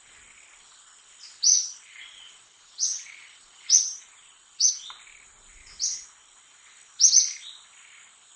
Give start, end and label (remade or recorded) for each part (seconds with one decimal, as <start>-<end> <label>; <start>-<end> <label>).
0.0-1.5 recorded; 1.5-4.7 remade; 4.7-8.4 recorded